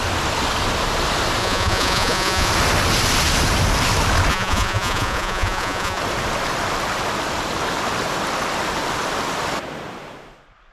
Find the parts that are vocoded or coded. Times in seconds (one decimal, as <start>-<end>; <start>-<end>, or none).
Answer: 1.4-2.5; 4.3-6.0